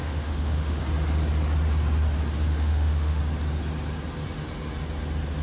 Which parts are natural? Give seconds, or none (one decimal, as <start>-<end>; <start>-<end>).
0.8-2.5; 3.2-5.4